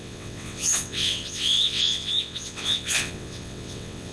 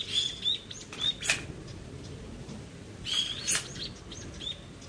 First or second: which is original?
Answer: second